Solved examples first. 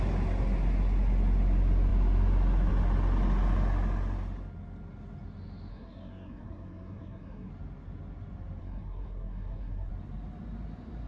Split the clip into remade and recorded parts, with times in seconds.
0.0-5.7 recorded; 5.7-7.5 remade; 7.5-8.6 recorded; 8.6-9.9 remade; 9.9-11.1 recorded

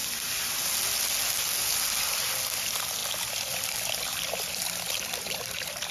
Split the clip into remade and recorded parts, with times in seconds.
0.0-0.6 remade; 0.6-3.0 recorded; 3.0-5.0 remade; 5.0-5.9 recorded

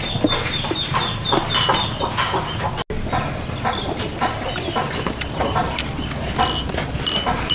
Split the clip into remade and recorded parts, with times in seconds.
0.0-0.5 recorded; 0.5-1.2 remade; 1.2-7.5 recorded